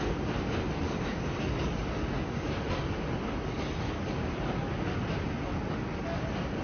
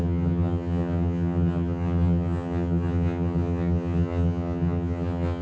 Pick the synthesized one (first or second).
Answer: second